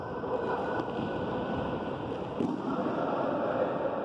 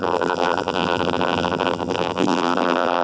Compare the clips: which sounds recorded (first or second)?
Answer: first